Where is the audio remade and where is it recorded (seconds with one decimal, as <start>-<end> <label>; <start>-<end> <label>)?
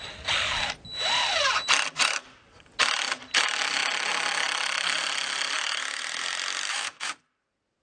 0.0-6.7 recorded; 6.7-7.2 remade; 7.2-7.8 recorded